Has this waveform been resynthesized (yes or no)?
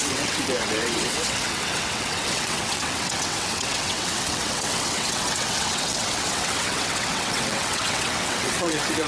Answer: yes